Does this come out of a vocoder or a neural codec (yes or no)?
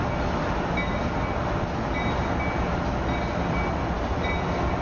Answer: no